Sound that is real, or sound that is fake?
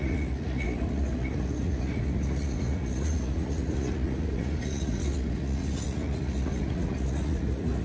fake